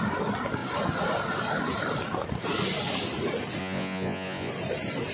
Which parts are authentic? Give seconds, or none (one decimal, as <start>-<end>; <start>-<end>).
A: 0.0-3.6; 4.5-5.1